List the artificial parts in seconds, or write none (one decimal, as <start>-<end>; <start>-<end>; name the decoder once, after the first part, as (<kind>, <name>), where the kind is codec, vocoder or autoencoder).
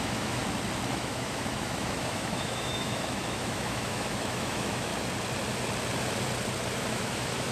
0.0-0.4 (autoencoder, DAC-VAE); 0.9-4.9; 6.8-7.5